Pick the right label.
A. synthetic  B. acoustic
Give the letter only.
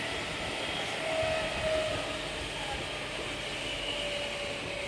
B